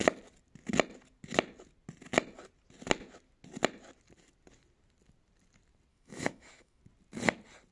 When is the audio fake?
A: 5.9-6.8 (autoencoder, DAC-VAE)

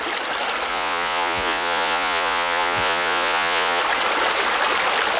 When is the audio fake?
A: 0.7-3.8 (vocoder, Vocos)

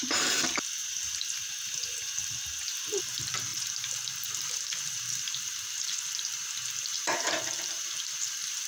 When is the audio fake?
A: 0.0-0.8 (vocoder, BigVGAN v2); 3.0-8.7

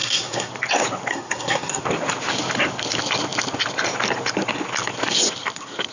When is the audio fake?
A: 0.0-0.5 (codec, SNAC); 1.1-1.8

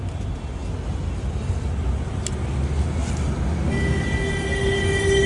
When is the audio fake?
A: none